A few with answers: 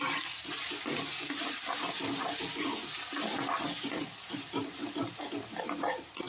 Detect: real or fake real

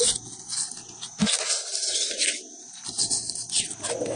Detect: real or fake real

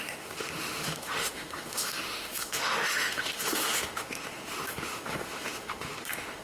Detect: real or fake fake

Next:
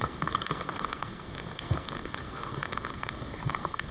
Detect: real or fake fake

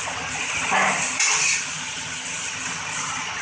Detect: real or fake real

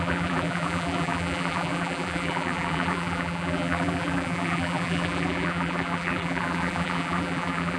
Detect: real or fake fake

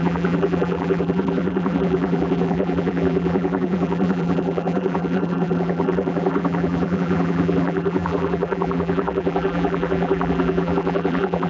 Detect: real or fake fake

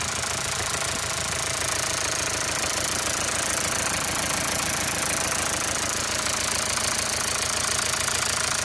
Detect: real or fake real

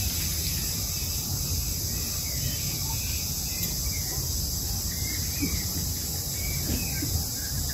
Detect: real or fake real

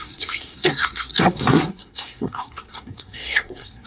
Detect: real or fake fake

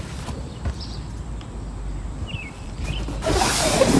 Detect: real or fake fake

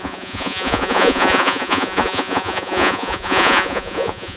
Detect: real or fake fake